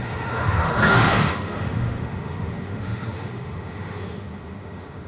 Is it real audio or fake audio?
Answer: fake